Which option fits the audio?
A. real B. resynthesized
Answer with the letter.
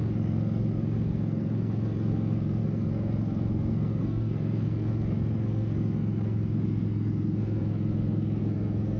B